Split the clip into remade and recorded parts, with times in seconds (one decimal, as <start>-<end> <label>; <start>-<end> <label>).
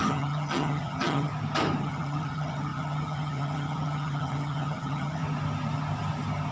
0.0-1.3 remade; 1.3-1.8 recorded; 1.8-5.2 remade; 5.2-6.5 recorded